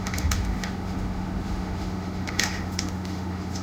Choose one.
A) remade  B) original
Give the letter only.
A